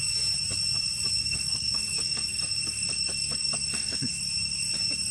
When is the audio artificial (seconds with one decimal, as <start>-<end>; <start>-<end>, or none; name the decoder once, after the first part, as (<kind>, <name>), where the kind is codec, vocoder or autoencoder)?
1.2-4.2 (codec, SNAC)